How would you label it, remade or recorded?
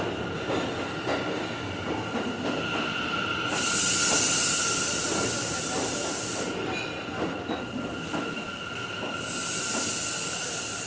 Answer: recorded